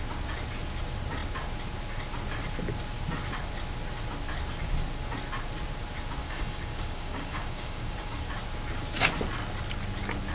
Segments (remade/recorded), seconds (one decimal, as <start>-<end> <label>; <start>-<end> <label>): 0.0-6.2 recorded; 6.2-8.3 remade; 8.3-10.3 recorded